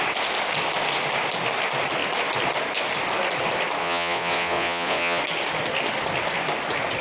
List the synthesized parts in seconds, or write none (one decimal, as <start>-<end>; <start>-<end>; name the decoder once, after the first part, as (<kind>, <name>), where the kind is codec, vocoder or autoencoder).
3.8-5.2 (vocoder, Vocos)